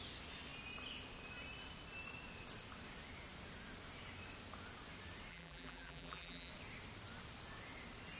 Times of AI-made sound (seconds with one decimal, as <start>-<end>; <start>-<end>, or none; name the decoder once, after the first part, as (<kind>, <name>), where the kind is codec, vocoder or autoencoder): 5.3-6.5 (vocoder, BigVGAN v2)